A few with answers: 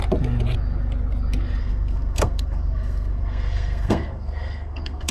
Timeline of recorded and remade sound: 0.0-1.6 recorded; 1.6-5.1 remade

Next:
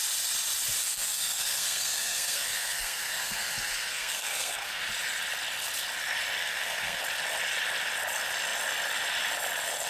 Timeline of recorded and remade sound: 0.0-0.8 recorded; 0.8-4.8 remade; 4.8-6.4 recorded; 6.4-7.0 remade; 7.0-9.9 recorded

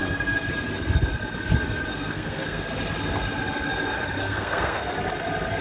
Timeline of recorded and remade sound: 0.0-0.5 remade; 0.5-1.9 recorded; 1.9-2.6 remade; 2.6-4.2 recorded; 4.2-4.9 remade; 4.9-5.6 recorded

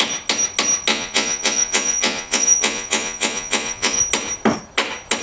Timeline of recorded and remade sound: 0.0-0.9 recorded; 0.9-4.0 remade; 4.0-5.2 recorded